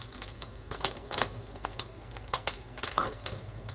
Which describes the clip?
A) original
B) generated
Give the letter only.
B